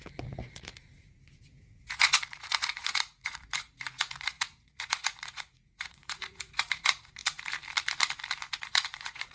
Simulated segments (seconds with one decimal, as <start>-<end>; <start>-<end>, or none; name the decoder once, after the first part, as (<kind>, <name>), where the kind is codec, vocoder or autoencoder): 0.0-7.2 (vocoder, Vocos); 8.6-9.3